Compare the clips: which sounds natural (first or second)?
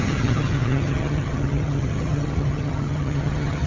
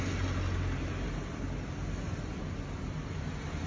second